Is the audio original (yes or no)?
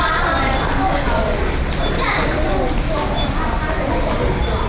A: yes